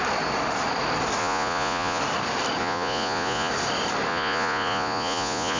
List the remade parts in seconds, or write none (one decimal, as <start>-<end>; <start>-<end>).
1.2-2.0; 2.6-3.5; 4.1-5.6